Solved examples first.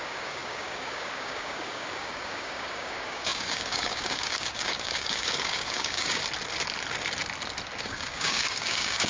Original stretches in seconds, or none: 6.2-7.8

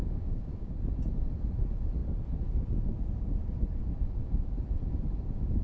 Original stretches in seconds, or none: 0.7-5.6

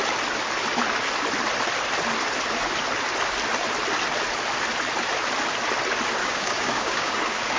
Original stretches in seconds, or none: 0.0-6.2

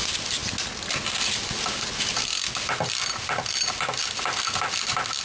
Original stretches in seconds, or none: 0.0-5.2

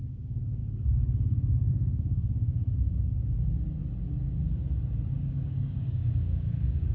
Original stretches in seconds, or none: 2.5-5.1